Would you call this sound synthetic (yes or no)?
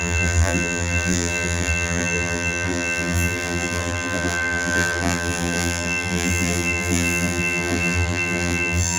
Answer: yes